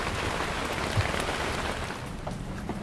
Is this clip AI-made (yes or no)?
no